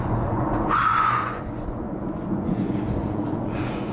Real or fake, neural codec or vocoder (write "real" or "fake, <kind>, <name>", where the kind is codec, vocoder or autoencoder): fake, vocoder, Vocos